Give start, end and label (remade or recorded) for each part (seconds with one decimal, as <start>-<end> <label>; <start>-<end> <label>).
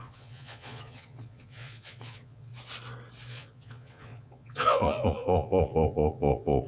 0.0-2.5 remade; 2.5-3.3 recorded; 3.3-6.7 remade